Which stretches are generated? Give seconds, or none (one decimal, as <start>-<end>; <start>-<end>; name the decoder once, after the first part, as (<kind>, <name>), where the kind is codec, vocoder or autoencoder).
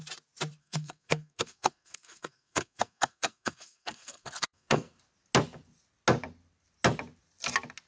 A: 0.6-5.0 (codec, SNAC)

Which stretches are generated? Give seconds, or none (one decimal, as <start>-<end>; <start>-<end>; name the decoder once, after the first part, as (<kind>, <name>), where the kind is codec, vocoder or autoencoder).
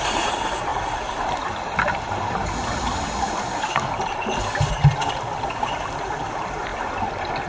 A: 0.7-1.3 (vocoder, BigVGAN v2)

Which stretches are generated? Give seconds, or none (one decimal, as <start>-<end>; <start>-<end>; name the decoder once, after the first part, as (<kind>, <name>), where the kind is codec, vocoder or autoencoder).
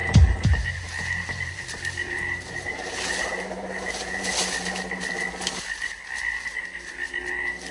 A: 0.0-4.3 (vocoder, BigVGAN v2)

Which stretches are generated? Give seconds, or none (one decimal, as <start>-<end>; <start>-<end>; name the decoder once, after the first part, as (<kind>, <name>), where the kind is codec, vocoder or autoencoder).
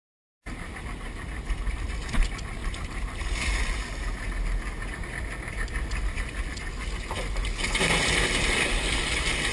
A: 2.6-3.6 (vocoder, BigVGAN v2)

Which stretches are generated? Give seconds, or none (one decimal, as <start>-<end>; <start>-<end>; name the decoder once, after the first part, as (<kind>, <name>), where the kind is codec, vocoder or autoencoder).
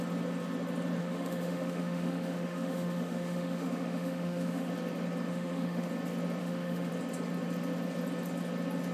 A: 1.0-4.7 (autoencoder, DAC-VAE); 5.3-5.9; 6.4-6.9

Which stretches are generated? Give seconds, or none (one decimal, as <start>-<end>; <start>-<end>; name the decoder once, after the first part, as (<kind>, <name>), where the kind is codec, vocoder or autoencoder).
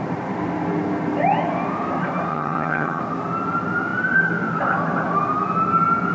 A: 2.3-3.0 (vocoder, HiFi-GAN)